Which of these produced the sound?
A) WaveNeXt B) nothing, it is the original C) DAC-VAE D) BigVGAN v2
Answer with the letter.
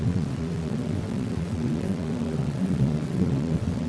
A